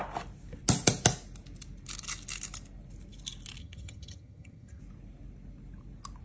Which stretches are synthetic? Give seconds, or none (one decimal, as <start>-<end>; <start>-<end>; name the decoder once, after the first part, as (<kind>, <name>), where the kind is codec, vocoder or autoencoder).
3.6-4.8 (vocoder, HiFi-GAN)